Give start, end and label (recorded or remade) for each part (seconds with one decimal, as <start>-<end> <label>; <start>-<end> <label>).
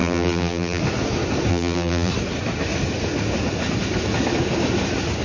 0.0-0.8 remade; 0.8-1.5 recorded; 1.5-2.1 remade; 2.1-5.2 recorded